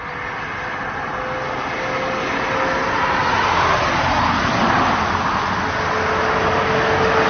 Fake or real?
real